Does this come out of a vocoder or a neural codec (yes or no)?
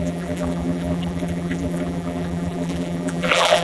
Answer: yes